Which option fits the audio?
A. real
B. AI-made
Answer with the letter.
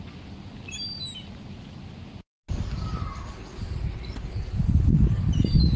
A